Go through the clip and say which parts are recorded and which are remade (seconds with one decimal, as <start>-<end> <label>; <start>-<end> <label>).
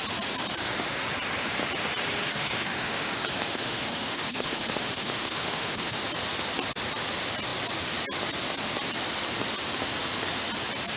0.0-2.3 recorded; 2.3-3.1 remade; 3.1-3.5 recorded; 3.5-6.0 remade; 6.0-11.0 recorded